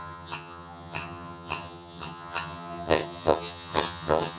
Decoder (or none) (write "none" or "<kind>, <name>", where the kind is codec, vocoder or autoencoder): vocoder, HiFi-GAN